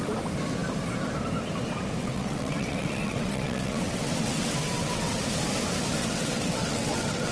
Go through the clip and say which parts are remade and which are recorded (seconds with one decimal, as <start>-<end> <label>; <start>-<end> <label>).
0.0-2.0 recorded; 2.0-5.2 remade; 5.2-6.0 recorded; 6.0-7.3 remade